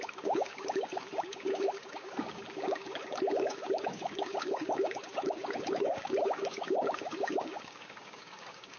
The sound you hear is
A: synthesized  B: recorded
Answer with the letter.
A